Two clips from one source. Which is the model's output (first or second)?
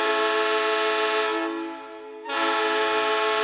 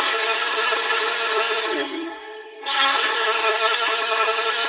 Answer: second